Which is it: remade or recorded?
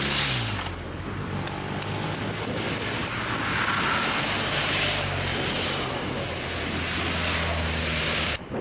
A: recorded